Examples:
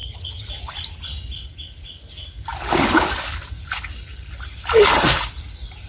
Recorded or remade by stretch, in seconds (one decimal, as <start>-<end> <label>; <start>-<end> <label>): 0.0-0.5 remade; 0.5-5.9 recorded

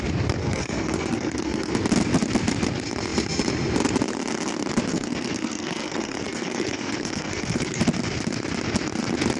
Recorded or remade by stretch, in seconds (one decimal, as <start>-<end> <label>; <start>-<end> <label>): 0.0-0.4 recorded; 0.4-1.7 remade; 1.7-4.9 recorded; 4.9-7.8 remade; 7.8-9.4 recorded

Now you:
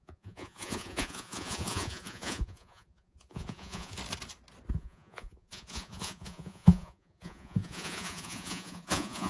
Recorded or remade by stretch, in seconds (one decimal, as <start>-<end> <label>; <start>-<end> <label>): 0.0-4.0 remade; 4.0-4.7 recorded; 4.7-9.3 remade

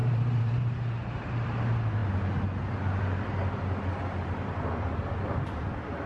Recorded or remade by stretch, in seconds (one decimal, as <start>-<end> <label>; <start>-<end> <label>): 0.0-1.6 remade; 1.6-6.1 recorded

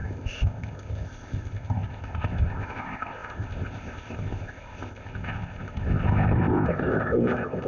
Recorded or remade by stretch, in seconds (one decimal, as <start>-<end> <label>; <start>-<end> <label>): 0.0-7.7 remade

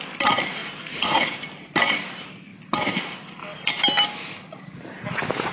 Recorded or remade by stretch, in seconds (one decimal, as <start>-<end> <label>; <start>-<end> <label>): 0.0-0.6 recorded; 0.6-1.3 remade; 1.3-5.5 recorded